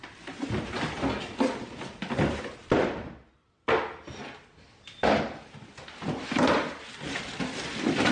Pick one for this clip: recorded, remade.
recorded